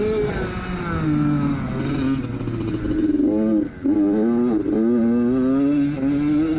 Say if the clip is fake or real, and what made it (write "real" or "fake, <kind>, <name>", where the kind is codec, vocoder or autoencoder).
real